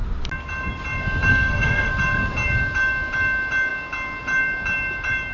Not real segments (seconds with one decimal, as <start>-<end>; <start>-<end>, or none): 1.3-1.9